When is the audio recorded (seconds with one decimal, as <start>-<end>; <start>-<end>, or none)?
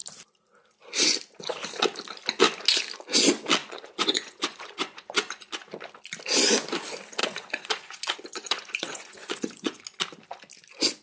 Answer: 0.0-3.6; 5.5-7.2; 9.8-11.0